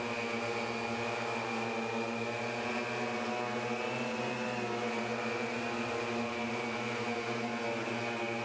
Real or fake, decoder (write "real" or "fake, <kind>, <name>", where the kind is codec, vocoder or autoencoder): real